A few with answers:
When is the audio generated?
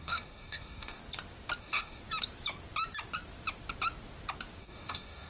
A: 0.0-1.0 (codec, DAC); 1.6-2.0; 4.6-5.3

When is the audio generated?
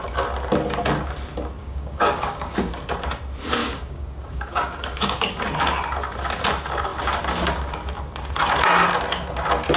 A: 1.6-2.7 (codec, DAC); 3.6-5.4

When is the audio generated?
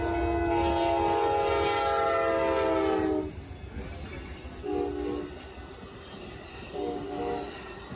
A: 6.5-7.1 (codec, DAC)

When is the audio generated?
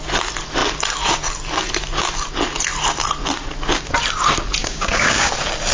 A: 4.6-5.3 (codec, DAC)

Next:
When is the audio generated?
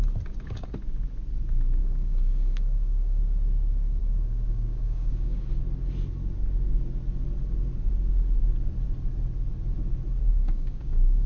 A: 1.8-3.2 (codec, DAC); 4.0-5.5; 10.2-11.3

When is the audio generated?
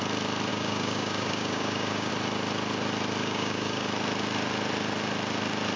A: 0.5-2.1 (codec, DAC); 3.2-3.9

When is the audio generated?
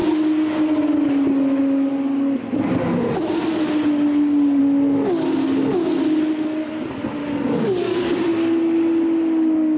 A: 7.2-8.2 (codec, DAC)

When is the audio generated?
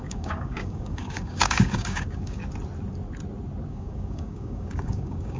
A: 0.0-2.4 (codec, DAC); 3.7-5.4